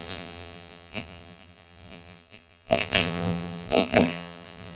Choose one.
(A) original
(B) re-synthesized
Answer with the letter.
B